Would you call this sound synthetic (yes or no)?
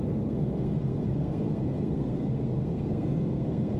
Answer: yes